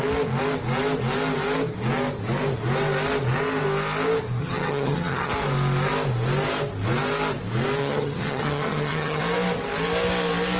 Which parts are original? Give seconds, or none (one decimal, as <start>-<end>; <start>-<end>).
0.0-4.4; 5.3-7.8; 9.2-10.6